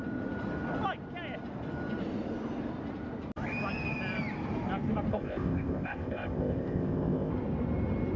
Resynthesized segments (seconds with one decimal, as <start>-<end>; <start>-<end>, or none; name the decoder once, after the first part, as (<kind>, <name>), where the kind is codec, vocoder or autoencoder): 5.1-7.3 (codec, ZipCodec)